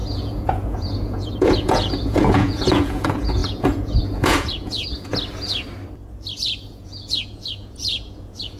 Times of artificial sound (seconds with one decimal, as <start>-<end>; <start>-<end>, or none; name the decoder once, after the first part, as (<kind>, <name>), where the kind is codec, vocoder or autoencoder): 0.0-5.1 (vocoder, Vocos); 6.6-8.6